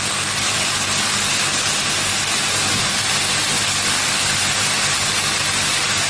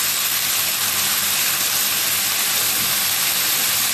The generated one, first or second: second